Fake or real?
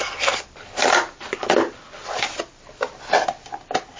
real